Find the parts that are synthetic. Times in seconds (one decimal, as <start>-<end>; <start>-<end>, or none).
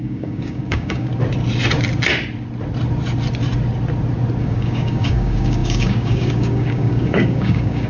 0.0-1.1; 4.4-7.9